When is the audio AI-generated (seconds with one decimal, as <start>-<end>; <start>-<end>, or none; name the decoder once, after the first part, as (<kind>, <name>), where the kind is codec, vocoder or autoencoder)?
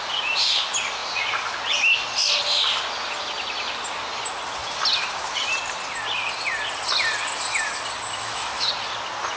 8.1-8.7 (autoencoder, DAC-VAE)